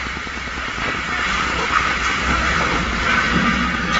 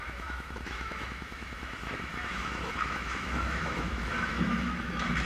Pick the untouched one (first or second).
first